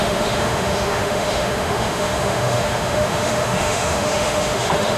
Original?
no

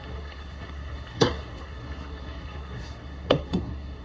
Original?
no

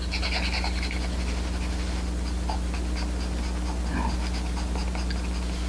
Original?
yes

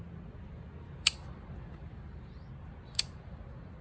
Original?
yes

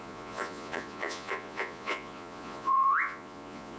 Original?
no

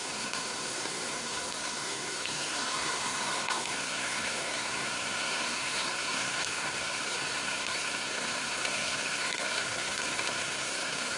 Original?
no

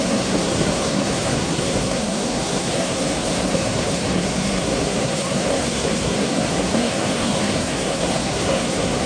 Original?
no